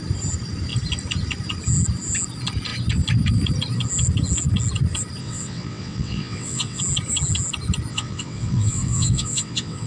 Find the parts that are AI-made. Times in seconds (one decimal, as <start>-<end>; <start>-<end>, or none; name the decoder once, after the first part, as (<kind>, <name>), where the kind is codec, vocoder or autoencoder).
5.2-6.8 (vocoder, WaveNeXt); 7.9-9.9